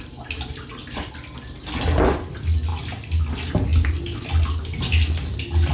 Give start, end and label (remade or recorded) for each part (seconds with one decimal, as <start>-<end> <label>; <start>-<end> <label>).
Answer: 0.0-5.7 recorded